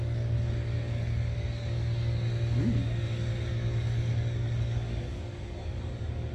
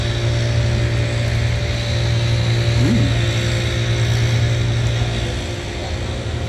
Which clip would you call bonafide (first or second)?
second